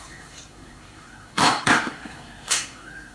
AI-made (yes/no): yes